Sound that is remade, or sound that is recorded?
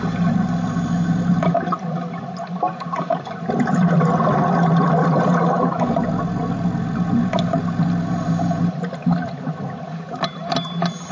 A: recorded